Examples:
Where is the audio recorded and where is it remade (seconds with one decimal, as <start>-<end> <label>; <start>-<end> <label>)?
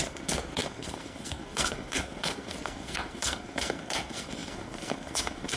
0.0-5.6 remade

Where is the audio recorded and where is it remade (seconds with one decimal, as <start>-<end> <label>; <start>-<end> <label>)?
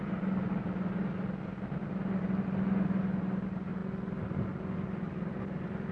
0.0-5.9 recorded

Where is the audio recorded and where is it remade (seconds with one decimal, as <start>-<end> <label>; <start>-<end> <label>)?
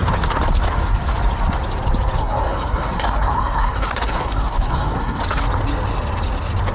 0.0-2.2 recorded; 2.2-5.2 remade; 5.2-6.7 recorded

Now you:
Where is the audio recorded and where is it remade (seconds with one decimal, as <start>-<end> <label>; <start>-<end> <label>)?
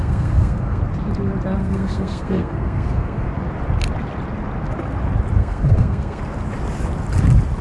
0.0-0.8 remade; 0.8-1.6 recorded; 1.6-3.3 remade; 3.3-5.4 recorded; 5.4-6.2 remade; 6.2-7.6 recorded